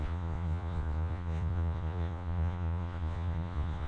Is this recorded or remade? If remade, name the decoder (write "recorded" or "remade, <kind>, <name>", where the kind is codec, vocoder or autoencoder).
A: remade, vocoder, Vocos